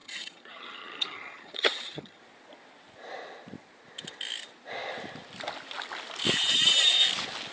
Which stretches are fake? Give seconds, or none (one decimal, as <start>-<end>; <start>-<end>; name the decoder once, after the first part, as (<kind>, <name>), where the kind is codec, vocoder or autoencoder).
0.0-2.2 (vocoder, HiFi-GAN)